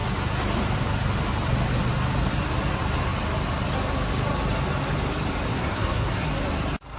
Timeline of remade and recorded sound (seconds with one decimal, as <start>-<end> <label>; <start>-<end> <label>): 0.0-5.5 recorded; 5.5-6.3 remade; 6.3-7.0 recorded